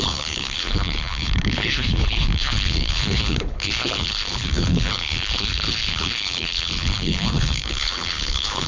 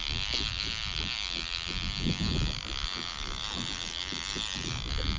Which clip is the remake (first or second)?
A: first